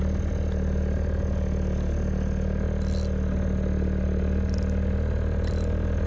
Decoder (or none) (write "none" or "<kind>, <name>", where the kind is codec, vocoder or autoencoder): none